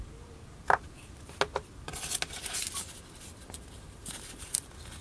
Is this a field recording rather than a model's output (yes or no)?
yes